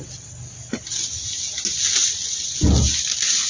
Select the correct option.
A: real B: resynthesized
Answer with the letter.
A